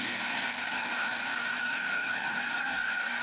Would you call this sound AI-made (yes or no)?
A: yes